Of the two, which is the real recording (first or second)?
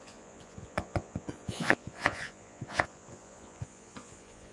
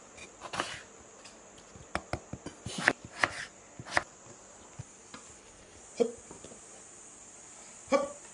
second